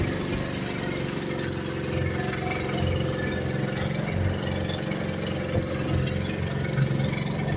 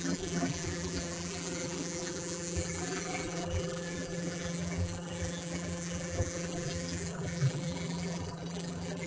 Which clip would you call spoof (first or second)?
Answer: second